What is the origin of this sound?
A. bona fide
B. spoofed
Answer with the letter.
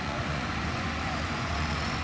B